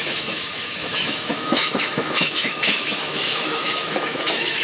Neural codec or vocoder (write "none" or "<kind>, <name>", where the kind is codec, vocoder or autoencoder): autoencoder, DAC-VAE